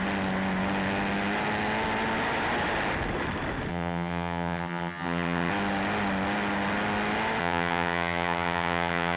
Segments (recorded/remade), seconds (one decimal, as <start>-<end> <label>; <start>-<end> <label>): 0.0-3.7 recorded; 3.7-5.5 remade; 5.5-7.4 recorded; 7.4-9.2 remade